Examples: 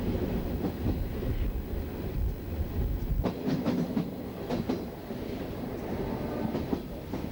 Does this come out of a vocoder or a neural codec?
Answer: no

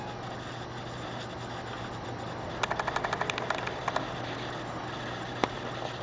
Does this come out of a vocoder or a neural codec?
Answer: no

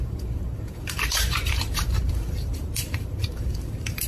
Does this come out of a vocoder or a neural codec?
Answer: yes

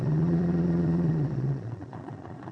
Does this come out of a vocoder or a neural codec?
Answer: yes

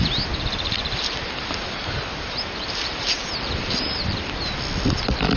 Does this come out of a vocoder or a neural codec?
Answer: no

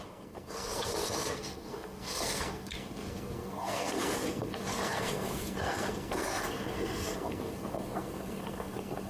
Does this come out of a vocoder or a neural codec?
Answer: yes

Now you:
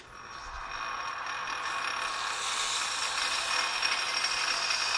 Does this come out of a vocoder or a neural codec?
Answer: no